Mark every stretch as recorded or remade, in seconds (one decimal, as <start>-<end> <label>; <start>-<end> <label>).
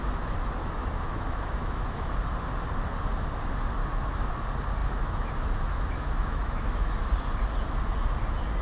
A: 0.0-0.6 recorded; 0.6-2.1 remade; 2.1-3.8 recorded; 3.8-4.3 remade; 4.3-4.8 recorded; 4.8-7.0 remade; 7.0-8.6 recorded